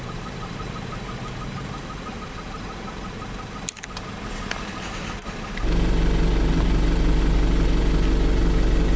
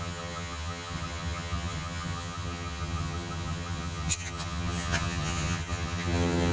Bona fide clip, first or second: first